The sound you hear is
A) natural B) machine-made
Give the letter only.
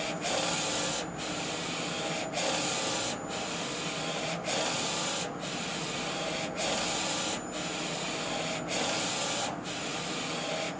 A